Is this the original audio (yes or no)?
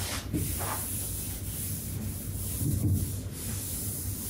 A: yes